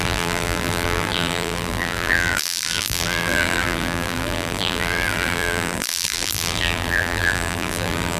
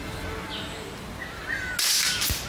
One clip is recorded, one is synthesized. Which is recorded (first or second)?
second